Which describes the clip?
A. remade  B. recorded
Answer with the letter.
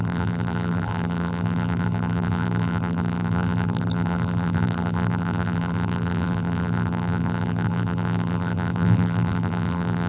A